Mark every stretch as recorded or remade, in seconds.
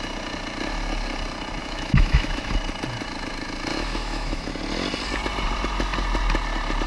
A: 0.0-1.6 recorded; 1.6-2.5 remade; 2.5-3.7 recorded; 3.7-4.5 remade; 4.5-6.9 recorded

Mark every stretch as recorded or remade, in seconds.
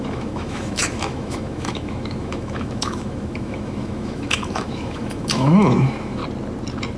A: 0.0-6.2 remade; 6.2-7.0 recorded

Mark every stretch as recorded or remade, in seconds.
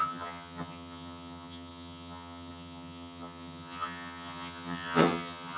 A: 0.0-5.6 remade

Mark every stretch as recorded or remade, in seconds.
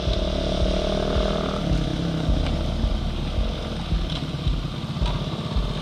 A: 0.0-5.8 recorded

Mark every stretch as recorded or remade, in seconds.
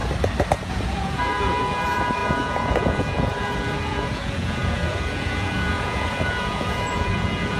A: 0.0-0.6 recorded; 0.6-7.6 remade